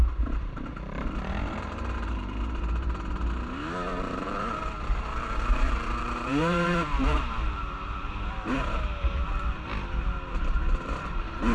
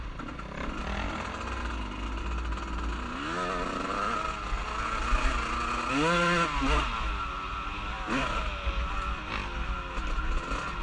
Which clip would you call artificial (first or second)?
first